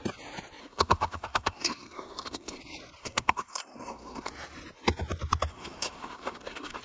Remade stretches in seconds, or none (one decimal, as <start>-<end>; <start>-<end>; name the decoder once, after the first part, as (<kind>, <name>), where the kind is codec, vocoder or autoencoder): 0.6-2.6 (codec, SNAC); 3.0-4.3; 5.5-6.8